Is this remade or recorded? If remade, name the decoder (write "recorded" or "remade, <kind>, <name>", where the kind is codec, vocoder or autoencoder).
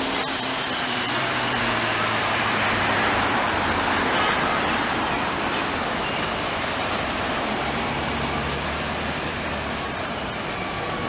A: remade, vocoder, BigVGAN v2